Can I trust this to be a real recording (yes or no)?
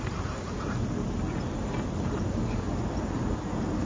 yes